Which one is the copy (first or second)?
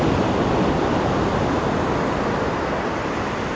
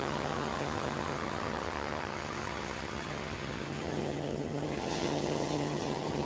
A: second